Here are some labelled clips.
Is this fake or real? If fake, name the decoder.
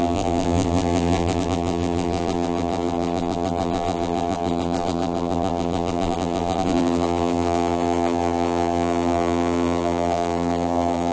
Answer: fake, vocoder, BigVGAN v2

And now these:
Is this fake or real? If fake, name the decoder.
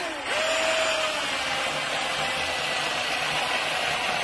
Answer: real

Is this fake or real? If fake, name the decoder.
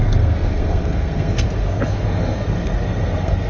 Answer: fake, codec, SNAC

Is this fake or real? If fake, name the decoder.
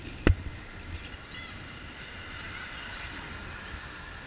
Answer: real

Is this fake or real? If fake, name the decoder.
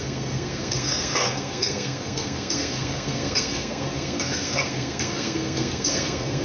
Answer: fake, codec, SNAC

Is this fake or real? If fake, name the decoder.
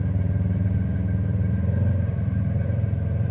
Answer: real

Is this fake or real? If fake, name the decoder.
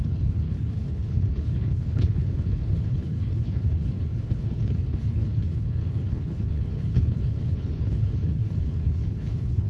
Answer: fake, codec, HILCodec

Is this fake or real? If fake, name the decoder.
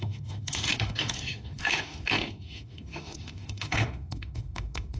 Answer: fake, autoencoder, DAC-VAE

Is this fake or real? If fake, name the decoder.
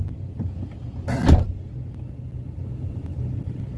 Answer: real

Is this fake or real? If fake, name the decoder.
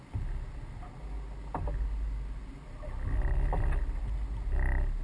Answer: real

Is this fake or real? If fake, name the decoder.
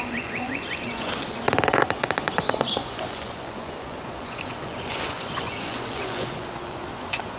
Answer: fake, vocoder, Vocos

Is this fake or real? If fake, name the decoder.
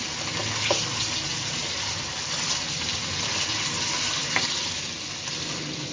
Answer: real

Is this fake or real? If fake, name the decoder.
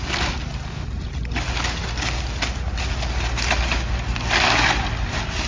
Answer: real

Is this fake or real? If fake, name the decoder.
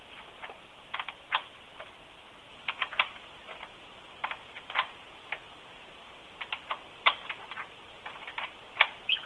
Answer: real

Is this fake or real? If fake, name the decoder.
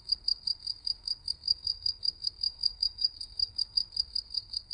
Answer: fake, codec, SNAC